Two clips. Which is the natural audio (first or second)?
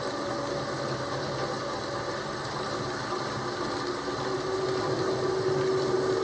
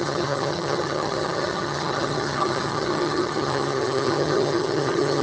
first